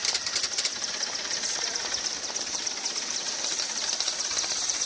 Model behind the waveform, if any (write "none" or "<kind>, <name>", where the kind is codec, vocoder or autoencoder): vocoder, BigVGAN v2